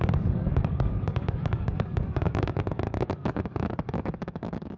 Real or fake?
fake